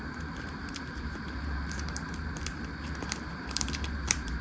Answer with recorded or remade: remade